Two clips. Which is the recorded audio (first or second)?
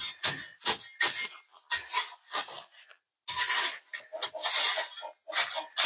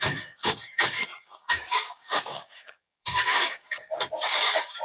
first